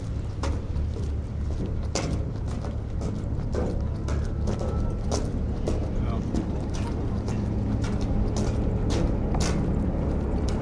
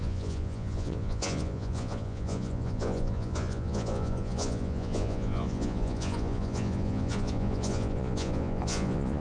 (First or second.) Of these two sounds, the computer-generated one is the second